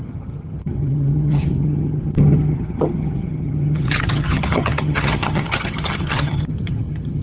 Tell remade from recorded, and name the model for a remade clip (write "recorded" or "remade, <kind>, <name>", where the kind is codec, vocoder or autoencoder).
remade, vocoder, HiFi-GAN